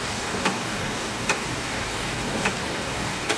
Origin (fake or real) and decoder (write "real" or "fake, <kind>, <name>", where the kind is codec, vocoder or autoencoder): fake, codec, DAC